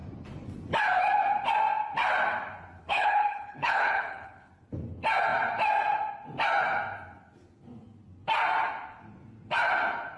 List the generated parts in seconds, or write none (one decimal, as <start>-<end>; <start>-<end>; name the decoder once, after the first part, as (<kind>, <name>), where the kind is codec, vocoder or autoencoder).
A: 2.8-4.5 (codec, HILCodec)